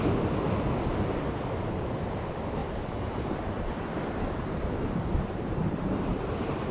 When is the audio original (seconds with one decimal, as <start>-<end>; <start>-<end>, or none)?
0.0-2.6